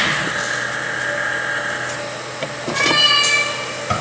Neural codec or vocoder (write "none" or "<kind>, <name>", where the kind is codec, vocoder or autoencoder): none